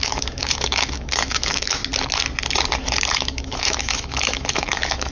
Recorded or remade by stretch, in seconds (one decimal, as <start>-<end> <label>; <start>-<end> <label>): 0.0-1.8 remade; 1.8-3.1 recorded; 3.1-5.1 remade